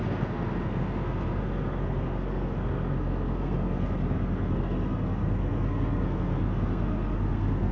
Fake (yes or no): yes